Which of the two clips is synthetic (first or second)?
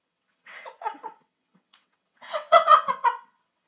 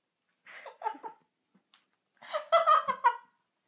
first